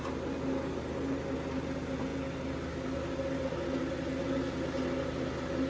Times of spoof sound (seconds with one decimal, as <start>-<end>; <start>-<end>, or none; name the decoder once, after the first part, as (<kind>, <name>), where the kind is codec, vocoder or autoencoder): none